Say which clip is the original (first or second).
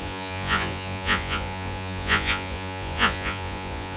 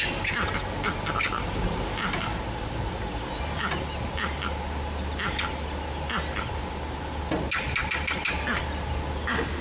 second